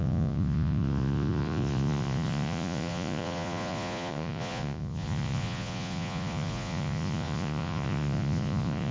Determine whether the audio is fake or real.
fake